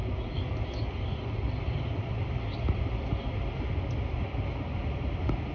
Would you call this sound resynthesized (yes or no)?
no